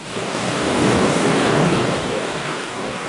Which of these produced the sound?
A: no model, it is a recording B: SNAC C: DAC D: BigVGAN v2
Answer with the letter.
C